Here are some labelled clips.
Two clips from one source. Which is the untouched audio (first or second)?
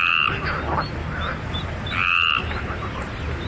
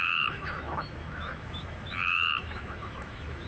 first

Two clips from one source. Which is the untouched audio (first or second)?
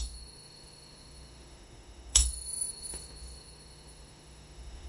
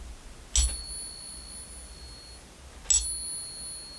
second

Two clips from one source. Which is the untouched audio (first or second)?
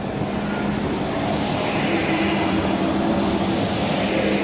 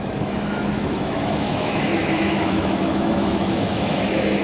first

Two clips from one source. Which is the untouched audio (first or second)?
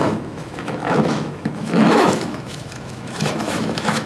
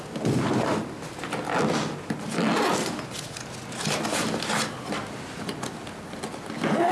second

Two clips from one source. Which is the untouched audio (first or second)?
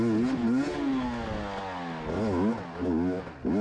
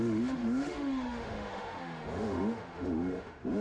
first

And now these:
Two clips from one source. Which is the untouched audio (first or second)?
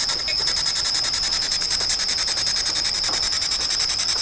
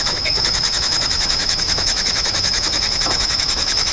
first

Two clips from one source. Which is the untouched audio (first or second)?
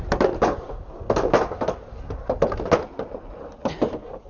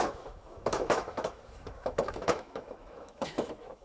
first